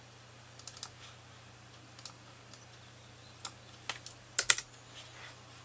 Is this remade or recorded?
recorded